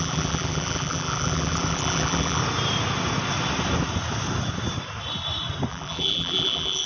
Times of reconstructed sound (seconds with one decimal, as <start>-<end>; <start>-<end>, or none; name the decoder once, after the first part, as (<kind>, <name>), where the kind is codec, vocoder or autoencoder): 0.0-2.4 (vocoder, BigVGAN v2); 5.7-6.9